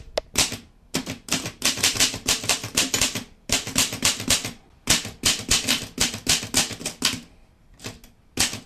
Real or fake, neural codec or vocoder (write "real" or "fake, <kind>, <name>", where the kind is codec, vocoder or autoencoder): real